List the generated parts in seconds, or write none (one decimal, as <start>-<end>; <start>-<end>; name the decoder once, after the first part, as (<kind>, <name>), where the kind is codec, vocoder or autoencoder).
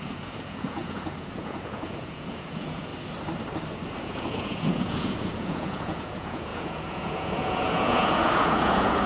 0.0-2.9 (vocoder, Vocos); 4.0-9.1